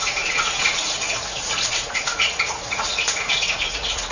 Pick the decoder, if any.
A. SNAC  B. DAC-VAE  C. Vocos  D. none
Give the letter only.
C